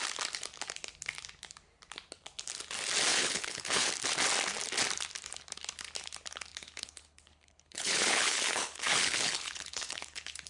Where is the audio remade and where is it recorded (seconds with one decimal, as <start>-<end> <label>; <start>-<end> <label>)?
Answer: 0.0-3.1 recorded; 3.1-3.9 remade; 3.9-6.5 recorded; 6.5-10.5 remade